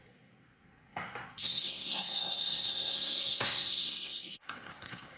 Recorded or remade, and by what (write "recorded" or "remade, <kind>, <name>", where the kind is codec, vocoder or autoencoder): remade, codec, SNAC